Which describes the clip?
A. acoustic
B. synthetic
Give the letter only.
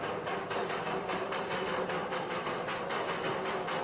A